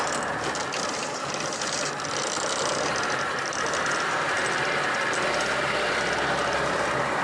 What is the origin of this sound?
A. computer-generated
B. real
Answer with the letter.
B